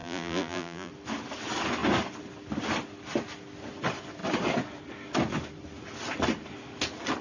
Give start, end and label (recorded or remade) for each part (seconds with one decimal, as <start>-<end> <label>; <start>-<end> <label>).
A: 0.0-0.9 remade; 0.9-7.2 recorded